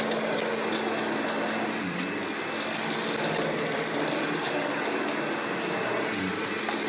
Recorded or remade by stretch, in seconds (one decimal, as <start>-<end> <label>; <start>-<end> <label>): 0.0-6.9 recorded